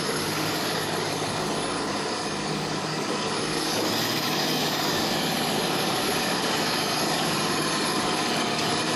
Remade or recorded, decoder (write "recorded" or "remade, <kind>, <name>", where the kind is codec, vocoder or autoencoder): remade, codec, DAC